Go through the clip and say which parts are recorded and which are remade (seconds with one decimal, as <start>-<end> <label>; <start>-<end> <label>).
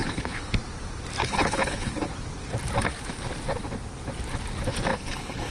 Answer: 0.0-0.5 remade; 0.5-1.2 recorded; 1.2-1.9 remade; 1.9-4.9 recorded; 4.9-5.5 remade